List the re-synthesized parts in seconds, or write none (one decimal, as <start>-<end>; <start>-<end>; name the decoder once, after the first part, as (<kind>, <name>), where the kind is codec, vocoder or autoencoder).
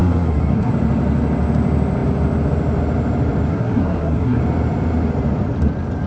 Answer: 0.0-0.7 (codec, SNAC); 3.5-4.4